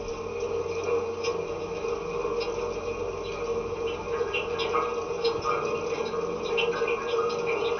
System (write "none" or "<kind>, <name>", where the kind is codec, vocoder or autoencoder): none